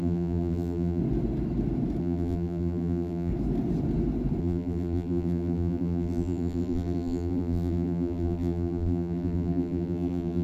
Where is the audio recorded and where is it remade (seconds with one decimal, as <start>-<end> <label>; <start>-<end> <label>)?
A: 0.0-1.0 remade; 1.0-2.0 recorded; 2.0-3.3 remade; 3.3-4.4 recorded; 4.4-10.4 remade